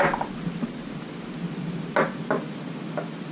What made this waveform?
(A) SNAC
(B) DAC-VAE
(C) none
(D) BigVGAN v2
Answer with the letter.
C